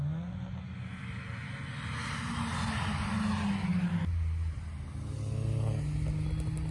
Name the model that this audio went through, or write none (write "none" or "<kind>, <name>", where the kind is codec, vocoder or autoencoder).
none